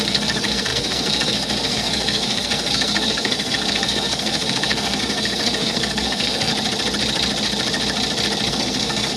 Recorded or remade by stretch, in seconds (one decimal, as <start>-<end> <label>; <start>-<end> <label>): 0.0-6.5 remade; 6.5-8.5 recorded; 8.5-9.2 remade

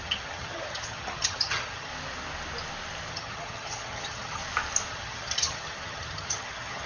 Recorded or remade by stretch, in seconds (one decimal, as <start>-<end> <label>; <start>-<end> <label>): 0.0-1.9 remade; 1.9-3.1 recorded; 3.1-4.4 remade; 4.4-4.9 recorded; 4.9-6.9 remade